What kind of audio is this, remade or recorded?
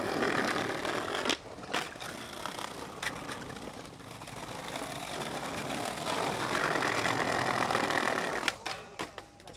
recorded